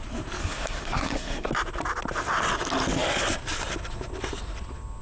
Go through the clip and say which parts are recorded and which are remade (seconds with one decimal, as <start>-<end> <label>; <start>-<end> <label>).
0.0-0.4 recorded; 0.4-1.5 remade; 1.5-5.0 recorded